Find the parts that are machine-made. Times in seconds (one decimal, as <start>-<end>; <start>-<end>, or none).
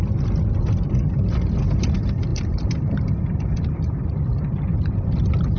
2.3-3.2